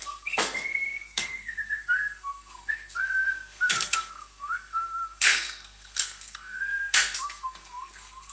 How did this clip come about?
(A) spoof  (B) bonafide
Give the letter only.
A